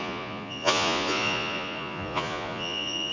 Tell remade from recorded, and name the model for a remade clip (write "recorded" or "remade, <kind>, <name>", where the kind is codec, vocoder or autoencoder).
remade, vocoder, Vocos